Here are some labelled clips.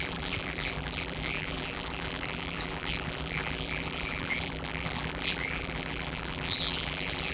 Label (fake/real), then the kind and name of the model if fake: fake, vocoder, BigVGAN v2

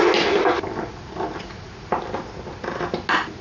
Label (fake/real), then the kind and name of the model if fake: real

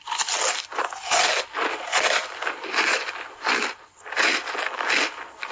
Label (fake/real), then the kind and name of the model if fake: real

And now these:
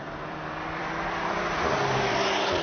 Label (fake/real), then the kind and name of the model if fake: fake, vocoder, BigVGAN v2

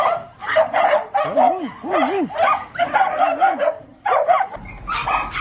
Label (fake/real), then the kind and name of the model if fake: fake, vocoder, BigVGAN v2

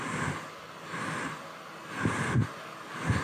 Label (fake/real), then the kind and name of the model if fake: real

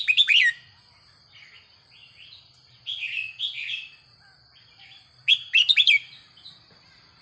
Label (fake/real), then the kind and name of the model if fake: real